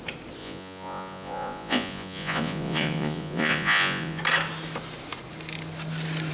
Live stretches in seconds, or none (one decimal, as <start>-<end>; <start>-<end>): 0.0-0.4; 4.2-6.3